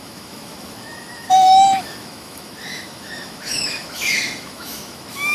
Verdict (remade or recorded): remade